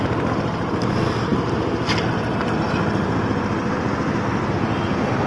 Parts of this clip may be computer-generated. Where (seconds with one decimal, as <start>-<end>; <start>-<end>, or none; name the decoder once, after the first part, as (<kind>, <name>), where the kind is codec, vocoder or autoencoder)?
none